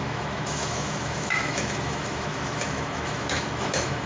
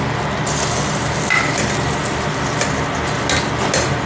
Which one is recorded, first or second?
second